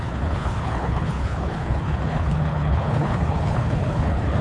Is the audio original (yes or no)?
no